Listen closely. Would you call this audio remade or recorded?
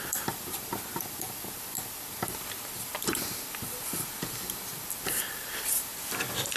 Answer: remade